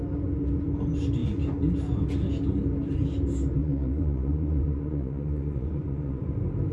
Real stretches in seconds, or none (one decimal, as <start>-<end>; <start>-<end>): 0.0-3.6; 6.2-6.7